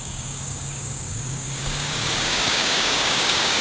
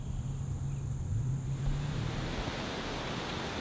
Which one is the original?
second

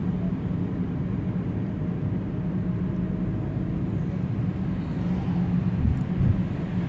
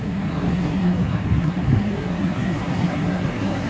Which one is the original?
first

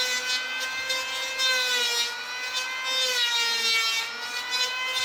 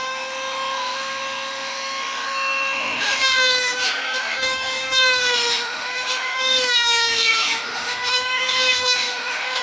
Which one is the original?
first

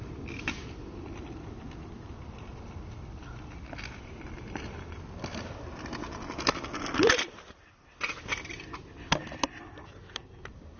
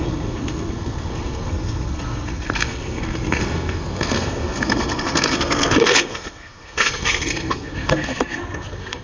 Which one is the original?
first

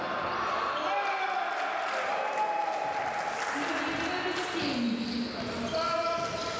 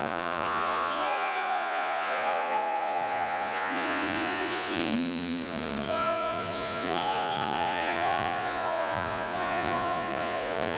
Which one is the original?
first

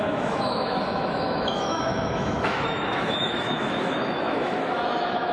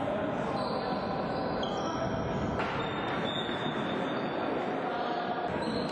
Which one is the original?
second